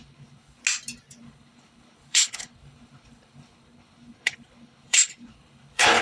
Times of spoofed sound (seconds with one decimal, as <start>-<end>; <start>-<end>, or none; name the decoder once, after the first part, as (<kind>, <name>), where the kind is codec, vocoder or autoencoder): 0.0-0.6 (codec, HILCodec); 1.2-6.0